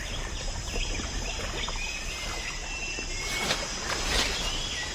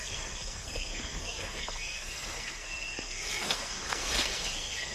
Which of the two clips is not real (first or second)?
second